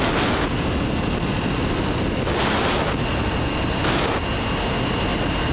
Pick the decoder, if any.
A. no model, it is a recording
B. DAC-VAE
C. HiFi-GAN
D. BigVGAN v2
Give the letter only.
A